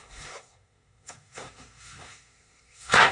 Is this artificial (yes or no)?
yes